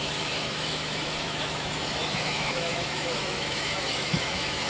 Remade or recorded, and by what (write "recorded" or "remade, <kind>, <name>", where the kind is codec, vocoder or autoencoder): remade, autoencoder, DAC-VAE